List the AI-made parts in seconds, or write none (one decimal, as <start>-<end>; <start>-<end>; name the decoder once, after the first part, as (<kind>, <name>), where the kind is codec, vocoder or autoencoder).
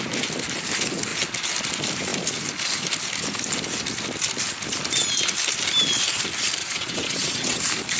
6.6-7.6 (vocoder, WaveNeXt)